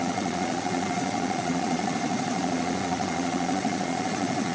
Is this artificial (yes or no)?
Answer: yes